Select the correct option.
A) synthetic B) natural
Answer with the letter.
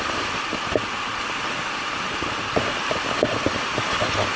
B